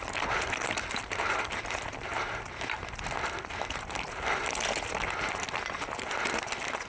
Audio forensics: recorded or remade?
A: recorded